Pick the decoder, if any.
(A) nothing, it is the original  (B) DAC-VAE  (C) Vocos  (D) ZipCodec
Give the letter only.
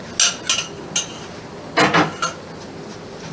A